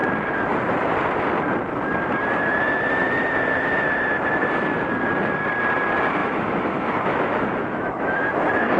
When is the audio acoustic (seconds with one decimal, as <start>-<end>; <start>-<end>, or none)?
0.0-6.2; 8.4-8.8